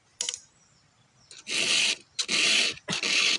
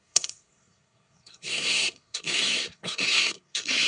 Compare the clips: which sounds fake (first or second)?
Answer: second